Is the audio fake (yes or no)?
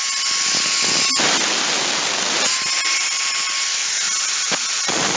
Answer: no